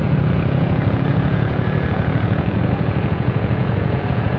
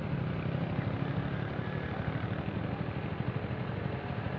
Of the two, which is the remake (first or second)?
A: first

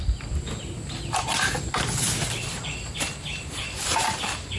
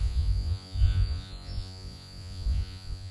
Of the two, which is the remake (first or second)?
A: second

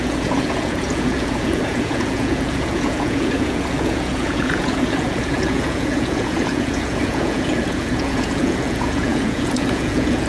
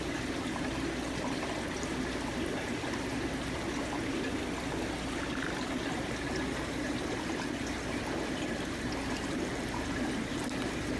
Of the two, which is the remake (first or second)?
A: first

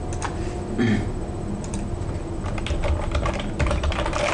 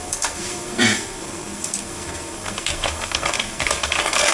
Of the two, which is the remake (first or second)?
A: second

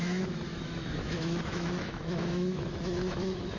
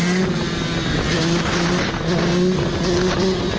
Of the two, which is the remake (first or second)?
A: first